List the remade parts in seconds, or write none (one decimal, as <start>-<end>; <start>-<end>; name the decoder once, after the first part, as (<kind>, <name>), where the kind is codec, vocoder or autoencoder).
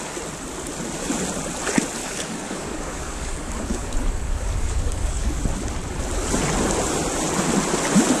2.0-5.4 (codec, DAC)